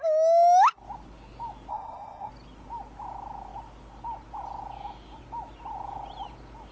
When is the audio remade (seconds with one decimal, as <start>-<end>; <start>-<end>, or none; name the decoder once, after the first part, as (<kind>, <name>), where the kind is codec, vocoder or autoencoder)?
1.7-2.3 (codec, SNAC)